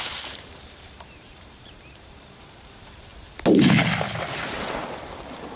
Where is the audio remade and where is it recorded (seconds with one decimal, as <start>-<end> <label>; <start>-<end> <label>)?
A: 0.0-3.1 remade; 3.1-4.4 recorded; 4.4-5.6 remade